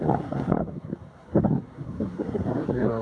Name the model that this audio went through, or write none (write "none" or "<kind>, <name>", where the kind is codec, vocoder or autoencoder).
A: codec, SNAC